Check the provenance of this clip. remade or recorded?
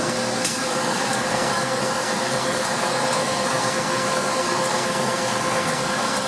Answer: remade